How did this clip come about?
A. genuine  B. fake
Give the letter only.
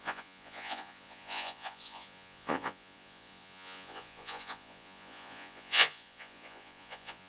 B